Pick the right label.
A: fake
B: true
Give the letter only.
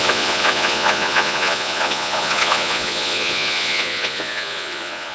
A